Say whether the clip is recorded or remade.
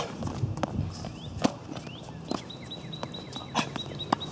recorded